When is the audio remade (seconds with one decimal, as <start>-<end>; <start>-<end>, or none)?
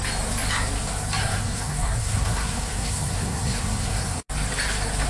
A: 1.2-4.3